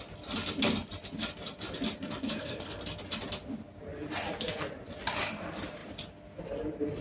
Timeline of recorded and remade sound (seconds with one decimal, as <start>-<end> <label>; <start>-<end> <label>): 0.0-2.2 recorded; 2.2-2.8 remade; 2.8-7.0 recorded